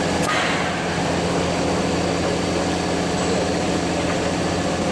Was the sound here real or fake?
real